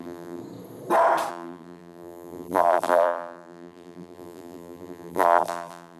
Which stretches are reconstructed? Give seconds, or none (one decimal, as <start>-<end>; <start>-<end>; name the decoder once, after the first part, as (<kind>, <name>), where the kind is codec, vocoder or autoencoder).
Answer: 0.0-0.4 (vocoder, BigVGAN v2); 1.3-6.0